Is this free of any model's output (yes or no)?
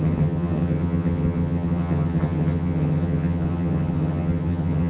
no